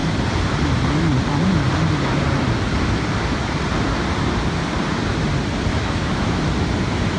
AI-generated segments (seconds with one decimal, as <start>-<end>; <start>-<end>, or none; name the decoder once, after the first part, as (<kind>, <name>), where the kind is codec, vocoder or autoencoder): 5.7-6.4 (autoencoder, DAC-VAE)